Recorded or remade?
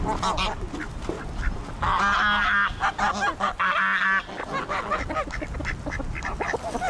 recorded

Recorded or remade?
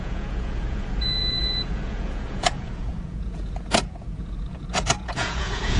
remade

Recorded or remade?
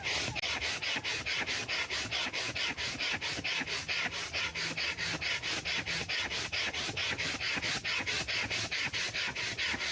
recorded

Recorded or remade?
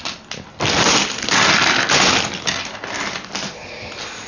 recorded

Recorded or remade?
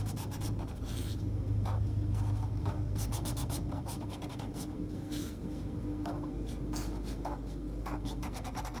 remade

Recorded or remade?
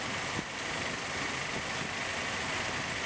recorded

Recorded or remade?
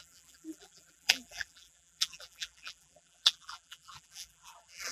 remade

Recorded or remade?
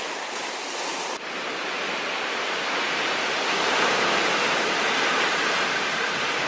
remade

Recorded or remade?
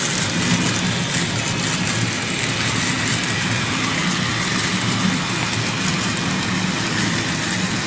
recorded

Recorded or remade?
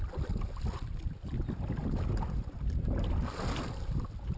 recorded